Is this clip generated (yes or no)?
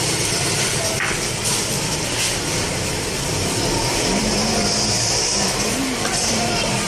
yes